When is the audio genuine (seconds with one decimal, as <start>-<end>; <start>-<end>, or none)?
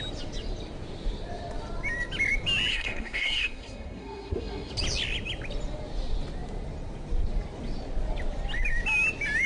0.0-2.7; 4.7-9.5